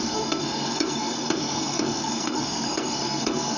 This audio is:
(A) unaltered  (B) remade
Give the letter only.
B